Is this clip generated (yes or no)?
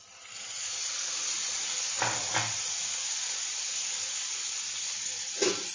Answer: no